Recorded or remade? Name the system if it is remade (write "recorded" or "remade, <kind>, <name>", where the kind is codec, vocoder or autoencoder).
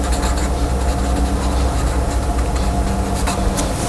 recorded